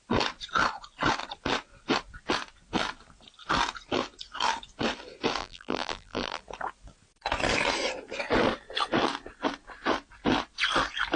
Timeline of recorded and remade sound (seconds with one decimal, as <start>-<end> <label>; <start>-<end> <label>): 0.0-5.4 recorded; 5.4-6.4 remade; 6.4-11.2 recorded